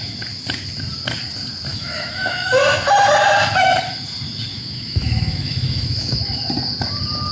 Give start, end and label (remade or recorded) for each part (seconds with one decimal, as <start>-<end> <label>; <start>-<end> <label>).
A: 0.0-1.7 recorded; 1.7-2.6 remade; 2.6-4.5 recorded; 4.5-6.4 remade; 6.4-7.3 recorded